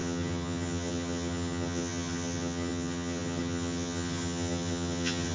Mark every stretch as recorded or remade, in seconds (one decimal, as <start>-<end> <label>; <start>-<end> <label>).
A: 0.0-5.3 remade